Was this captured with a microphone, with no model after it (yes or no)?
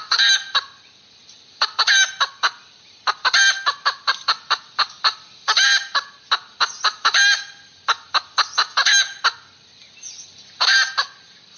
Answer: yes